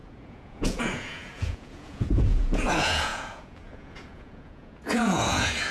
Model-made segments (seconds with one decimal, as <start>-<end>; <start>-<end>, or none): 0.0-5.7